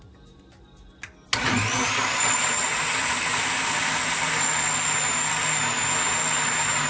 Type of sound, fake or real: real